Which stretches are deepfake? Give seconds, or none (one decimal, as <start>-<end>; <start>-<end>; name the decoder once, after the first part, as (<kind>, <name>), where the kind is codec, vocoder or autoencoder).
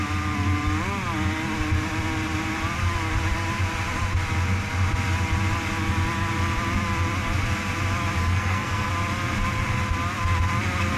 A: 8.2-8.9 (codec, SNAC)